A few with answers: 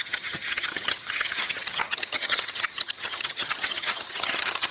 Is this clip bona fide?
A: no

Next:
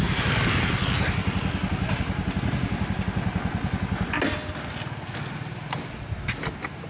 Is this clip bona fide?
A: yes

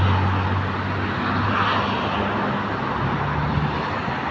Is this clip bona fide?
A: yes